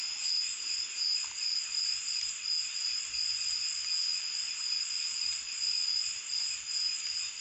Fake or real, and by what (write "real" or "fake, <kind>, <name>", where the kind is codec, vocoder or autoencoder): real